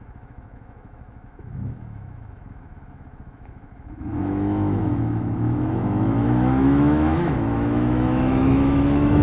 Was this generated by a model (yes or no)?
yes